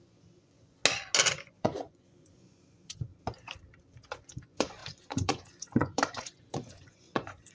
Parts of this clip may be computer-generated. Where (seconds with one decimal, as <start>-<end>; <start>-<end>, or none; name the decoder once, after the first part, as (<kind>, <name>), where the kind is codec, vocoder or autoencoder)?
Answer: 0.0-0.8 (vocoder, Vocos); 1.4-3.1; 3.8-7.5